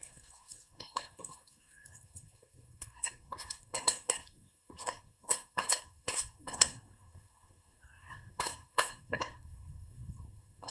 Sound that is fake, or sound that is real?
fake